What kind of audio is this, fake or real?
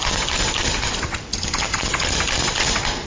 real